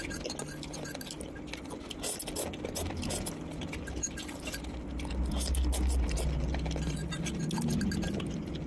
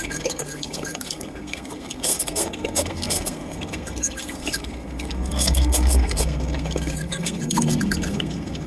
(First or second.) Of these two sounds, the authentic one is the first